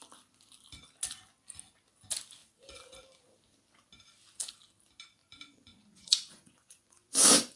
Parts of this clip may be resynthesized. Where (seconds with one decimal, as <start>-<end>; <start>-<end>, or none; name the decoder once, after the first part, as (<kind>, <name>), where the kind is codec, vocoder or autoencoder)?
5.2-7.6 (vocoder, Vocos)